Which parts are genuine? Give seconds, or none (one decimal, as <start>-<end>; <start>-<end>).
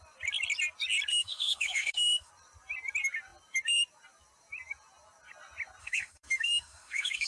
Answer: 0.0-1.1; 2.3-5.8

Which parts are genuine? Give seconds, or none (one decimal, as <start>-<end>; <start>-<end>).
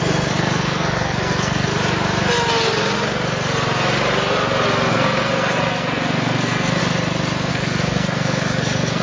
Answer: 1.7-4.9; 6.8-7.5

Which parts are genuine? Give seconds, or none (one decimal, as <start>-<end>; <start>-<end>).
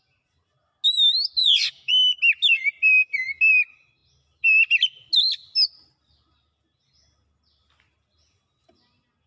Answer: 0.0-1.4; 1.9-9.3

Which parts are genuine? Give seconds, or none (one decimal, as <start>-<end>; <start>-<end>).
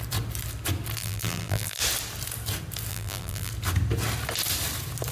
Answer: 0.0-1.0; 1.8-2.9; 3.5-5.1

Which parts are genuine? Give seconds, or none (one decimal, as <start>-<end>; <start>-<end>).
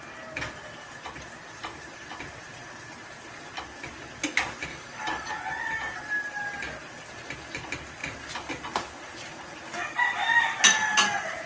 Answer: 0.0-4.7; 5.3-11.5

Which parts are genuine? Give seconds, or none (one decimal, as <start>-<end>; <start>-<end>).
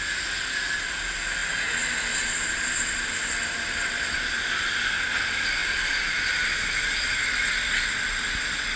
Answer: 0.0-5.6; 6.3-8.8